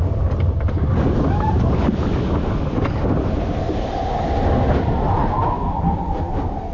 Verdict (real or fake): real